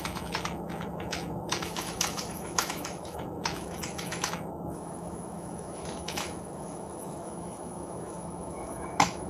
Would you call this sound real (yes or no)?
no